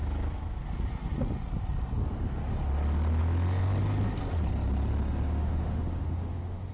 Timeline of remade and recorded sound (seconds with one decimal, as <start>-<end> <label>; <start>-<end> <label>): 0.0-5.4 recorded; 5.4-6.7 remade